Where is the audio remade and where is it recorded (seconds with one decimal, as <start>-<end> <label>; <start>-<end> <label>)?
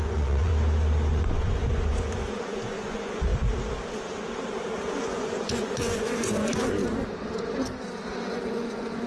0.0-0.5 remade; 0.5-1.1 recorded; 1.1-3.3 remade; 3.3-5.0 recorded; 5.0-6.8 remade; 6.8-8.1 recorded; 8.1-9.1 remade